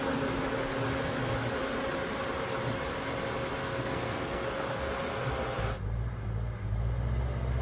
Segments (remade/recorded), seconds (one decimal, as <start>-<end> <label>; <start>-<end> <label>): 0.0-3.6 recorded; 3.6-4.8 remade; 4.8-7.6 recorded